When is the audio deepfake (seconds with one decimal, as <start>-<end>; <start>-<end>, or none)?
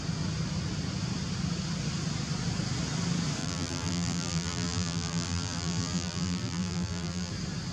3.4-7.3